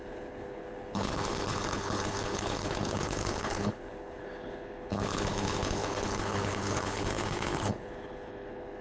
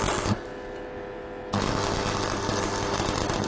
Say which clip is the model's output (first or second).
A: first